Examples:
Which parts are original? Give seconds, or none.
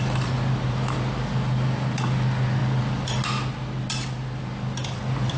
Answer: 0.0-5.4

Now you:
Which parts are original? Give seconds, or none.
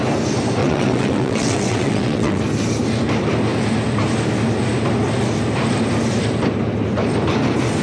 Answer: 0.0-0.6; 2.4-7.8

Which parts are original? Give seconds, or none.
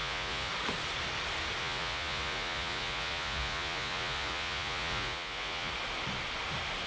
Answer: 0.5-1.6; 5.7-6.9